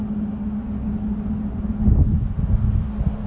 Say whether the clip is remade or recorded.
recorded